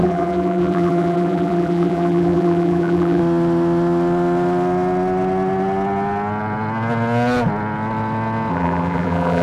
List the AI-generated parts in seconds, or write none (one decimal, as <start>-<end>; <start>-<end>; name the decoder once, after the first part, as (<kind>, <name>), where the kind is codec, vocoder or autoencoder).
0.0-3.2 (vocoder, BigVGAN v2); 8.5-9.4